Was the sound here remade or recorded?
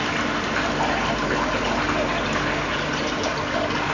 recorded